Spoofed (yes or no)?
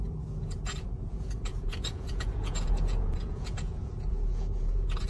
yes